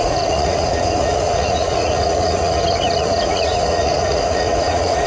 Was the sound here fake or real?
fake